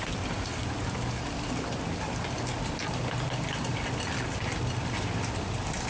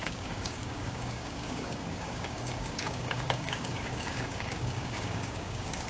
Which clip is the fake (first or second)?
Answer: second